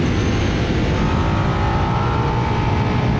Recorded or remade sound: recorded